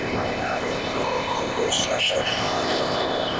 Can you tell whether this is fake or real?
fake